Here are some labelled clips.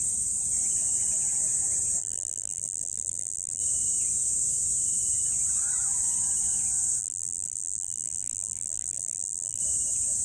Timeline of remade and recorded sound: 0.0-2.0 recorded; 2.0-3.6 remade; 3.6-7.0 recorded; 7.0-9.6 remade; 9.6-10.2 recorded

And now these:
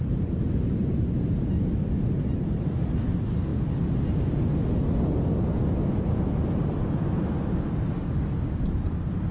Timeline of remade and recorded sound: 0.0-1.7 remade; 1.7-9.3 recorded